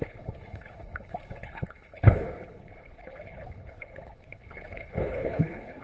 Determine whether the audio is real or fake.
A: fake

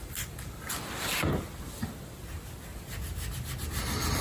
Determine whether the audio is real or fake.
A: real